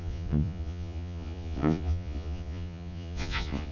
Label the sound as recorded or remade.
remade